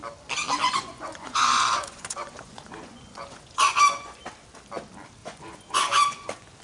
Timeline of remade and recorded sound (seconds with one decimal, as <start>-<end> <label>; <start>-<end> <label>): 0.0-0.6 recorded; 0.6-4.2 remade; 4.2-5.2 recorded; 5.2-6.6 remade